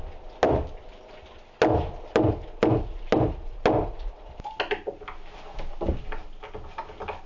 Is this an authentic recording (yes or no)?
yes